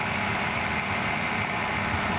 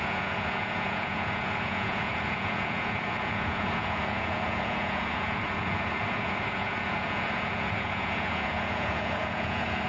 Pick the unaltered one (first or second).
first